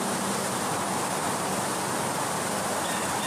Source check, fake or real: fake